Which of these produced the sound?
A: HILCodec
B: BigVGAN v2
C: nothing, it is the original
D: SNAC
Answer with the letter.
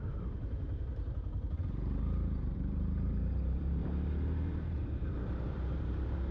B